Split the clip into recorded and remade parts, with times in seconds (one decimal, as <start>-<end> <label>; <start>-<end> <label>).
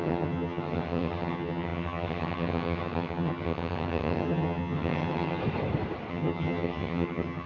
0.0-5.4 remade; 5.4-6.1 recorded; 6.1-7.5 remade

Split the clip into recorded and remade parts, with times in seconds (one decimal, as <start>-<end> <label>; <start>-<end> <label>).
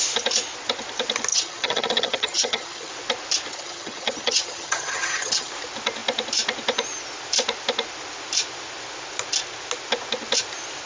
0.0-1.3 recorded; 1.3-2.9 remade; 2.9-3.5 recorded; 3.5-5.5 remade; 5.5-10.9 recorded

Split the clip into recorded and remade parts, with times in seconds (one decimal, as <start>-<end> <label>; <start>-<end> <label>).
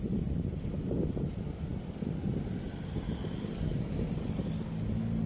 0.0-5.3 recorded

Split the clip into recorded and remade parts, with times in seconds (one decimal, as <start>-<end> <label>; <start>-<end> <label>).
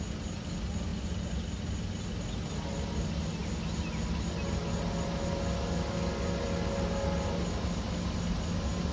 0.0-8.9 recorded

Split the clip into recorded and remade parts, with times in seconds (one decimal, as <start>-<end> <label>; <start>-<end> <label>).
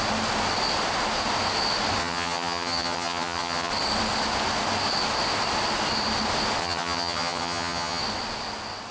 0.0-2.0 recorded; 2.0-3.7 remade; 3.7-6.6 recorded; 6.6-8.0 remade; 8.0-8.9 recorded